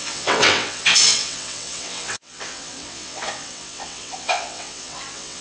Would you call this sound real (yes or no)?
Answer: no